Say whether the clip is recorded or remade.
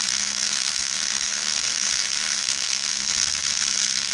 remade